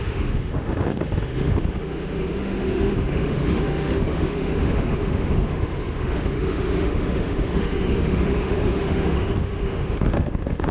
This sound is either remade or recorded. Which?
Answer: remade